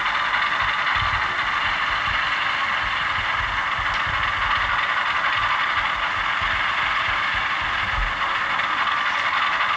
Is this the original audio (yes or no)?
yes